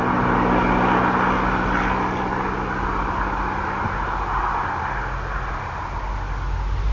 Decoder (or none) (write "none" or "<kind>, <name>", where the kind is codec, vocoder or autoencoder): none